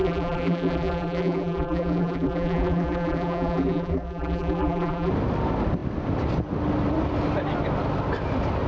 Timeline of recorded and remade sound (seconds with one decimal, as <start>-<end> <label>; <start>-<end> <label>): 0.0-5.1 remade; 5.1-8.7 recorded